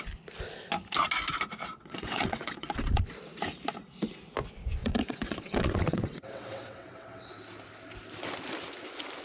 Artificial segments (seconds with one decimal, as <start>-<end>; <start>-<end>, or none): 1.6-3.0; 4.8-7.3